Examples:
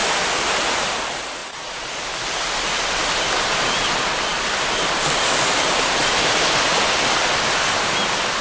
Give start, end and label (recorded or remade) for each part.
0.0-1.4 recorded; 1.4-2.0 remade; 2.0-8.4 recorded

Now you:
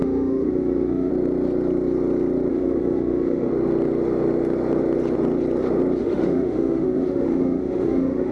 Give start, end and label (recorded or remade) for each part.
0.0-1.1 remade; 1.1-2.5 recorded; 2.5-3.5 remade; 3.5-6.0 recorded; 6.0-8.3 remade

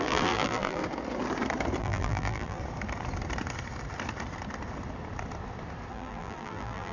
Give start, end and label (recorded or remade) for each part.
0.0-0.8 remade; 0.8-1.8 recorded; 1.8-2.6 remade; 2.6-5.9 recorded; 5.9-6.9 remade